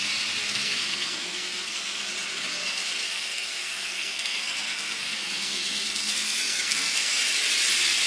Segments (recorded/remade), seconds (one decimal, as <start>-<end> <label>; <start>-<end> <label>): 0.0-0.4 recorded; 0.4-2.1 remade; 2.1-2.6 recorded; 2.6-7.2 remade; 7.2-8.1 recorded